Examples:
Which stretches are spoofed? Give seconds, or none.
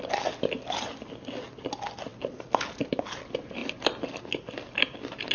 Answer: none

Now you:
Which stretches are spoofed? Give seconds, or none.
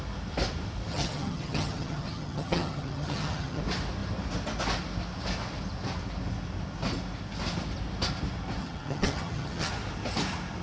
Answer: 0.9-3.6 (vocoder, HiFi-GAN); 8.6-9.7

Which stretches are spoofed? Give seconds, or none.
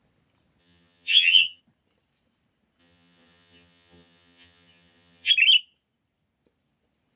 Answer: 0.6-1.6 (vocoder, HiFi-GAN); 2.8-5.3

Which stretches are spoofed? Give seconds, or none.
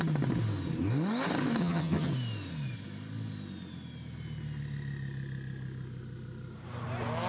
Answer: 1.6-2.1 (vocoder, HiFi-GAN)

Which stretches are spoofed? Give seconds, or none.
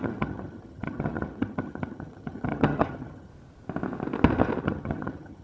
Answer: 0.0-3.3 (vocoder, HiFi-GAN); 4.6-5.4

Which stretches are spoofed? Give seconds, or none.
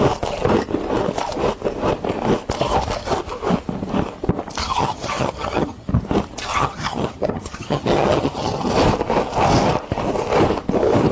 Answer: 4.6-5.9 (vocoder, HiFi-GAN); 6.5-8.7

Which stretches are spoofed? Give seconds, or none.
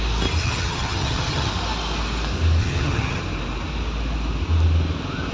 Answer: 0.4-1.5 (vocoder, HiFi-GAN); 2.6-3.2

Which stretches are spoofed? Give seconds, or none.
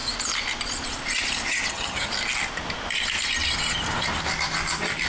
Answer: 1.7-2.1 (vocoder, HiFi-GAN)